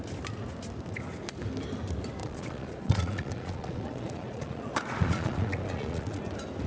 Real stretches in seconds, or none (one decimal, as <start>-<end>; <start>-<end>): 0.0-2.2; 6.2-6.7